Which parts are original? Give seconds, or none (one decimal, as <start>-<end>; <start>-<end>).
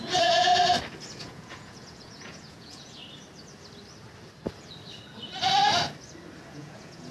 0.5-1.2; 3.0-6.4